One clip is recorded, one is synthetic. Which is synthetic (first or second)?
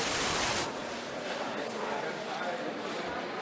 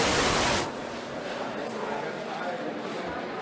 first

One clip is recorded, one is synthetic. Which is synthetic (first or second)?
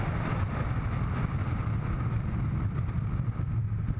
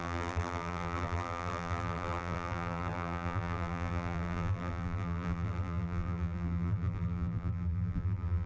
second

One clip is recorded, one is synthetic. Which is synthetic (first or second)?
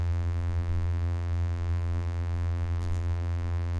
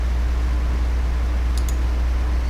first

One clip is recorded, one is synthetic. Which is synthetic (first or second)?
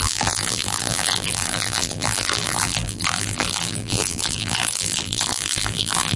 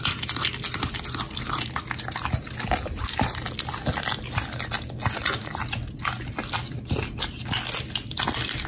first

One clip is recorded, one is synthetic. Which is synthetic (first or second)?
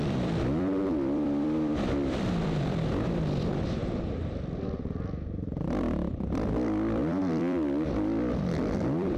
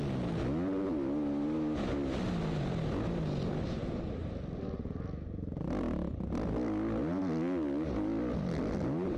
first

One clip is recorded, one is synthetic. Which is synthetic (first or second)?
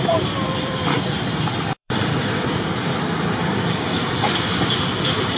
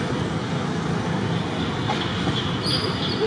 first